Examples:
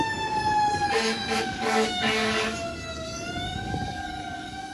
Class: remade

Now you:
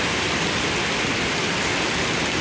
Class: recorded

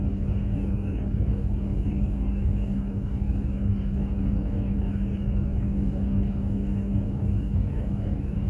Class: remade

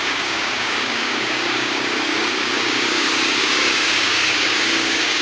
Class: remade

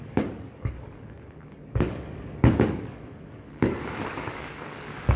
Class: remade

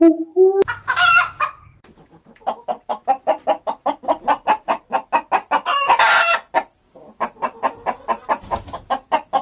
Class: recorded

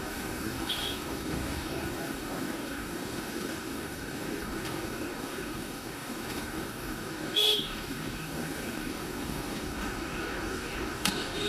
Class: remade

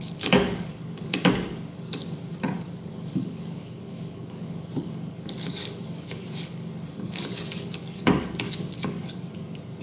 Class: remade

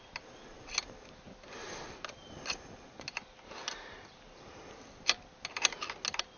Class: recorded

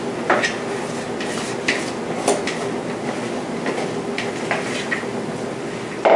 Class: recorded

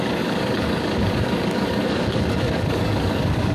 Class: remade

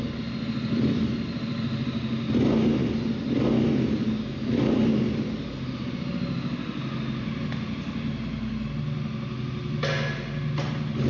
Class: recorded